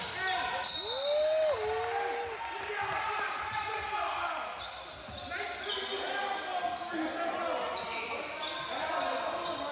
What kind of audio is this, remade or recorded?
recorded